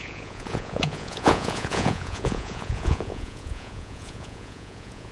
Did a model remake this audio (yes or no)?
yes